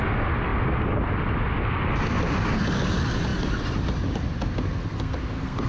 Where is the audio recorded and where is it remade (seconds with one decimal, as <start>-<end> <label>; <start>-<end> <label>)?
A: 0.0-4.8 recorded; 4.8-5.7 remade